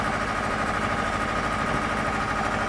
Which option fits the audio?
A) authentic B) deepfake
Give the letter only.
A